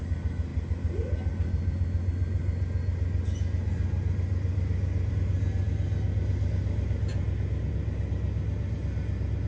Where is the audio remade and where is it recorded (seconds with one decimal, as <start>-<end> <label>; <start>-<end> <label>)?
0.0-9.5 recorded